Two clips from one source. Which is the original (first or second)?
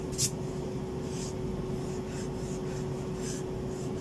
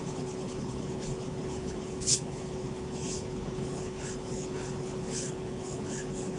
first